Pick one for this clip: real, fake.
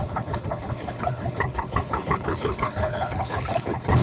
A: fake